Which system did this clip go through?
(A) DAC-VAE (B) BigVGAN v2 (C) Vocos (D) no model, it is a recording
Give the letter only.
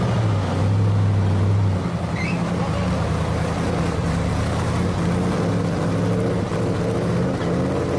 D